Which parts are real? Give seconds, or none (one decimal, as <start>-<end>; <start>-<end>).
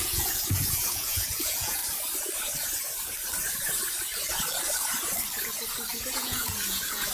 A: 1.8-6.1